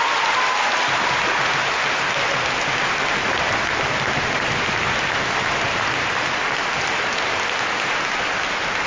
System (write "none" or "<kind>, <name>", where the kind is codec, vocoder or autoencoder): none